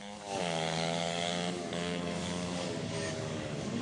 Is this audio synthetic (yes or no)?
yes